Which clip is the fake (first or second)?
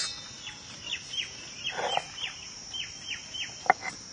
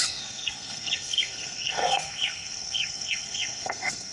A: second